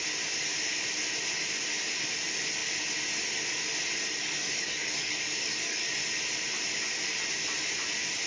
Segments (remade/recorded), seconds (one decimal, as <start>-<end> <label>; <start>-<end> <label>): 0.0-4.2 recorded; 4.2-5.9 remade; 5.9-8.3 recorded